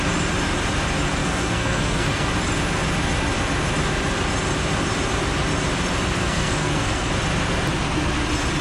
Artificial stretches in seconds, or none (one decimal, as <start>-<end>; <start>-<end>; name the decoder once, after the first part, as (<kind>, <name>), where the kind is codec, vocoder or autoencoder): 1.2-2.3 (codec, SNAC); 6.2-7.1